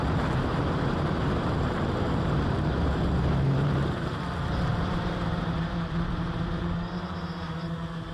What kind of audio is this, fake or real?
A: fake